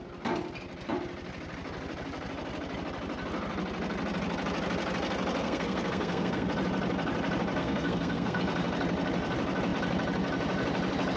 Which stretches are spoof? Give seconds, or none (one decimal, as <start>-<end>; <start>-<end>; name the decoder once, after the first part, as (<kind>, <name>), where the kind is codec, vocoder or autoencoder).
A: 5.4-6.5 (codec, SNAC); 7.6-8.4